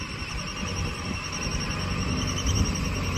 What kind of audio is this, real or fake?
real